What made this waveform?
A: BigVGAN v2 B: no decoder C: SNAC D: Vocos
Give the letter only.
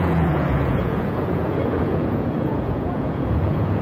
D